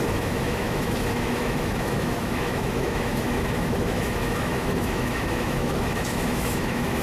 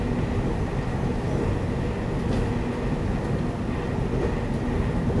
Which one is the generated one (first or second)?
first